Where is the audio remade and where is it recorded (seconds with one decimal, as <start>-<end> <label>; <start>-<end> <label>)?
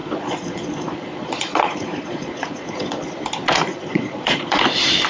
0.0-3.1 remade; 3.1-3.7 recorded; 3.7-4.6 remade; 4.6-5.1 recorded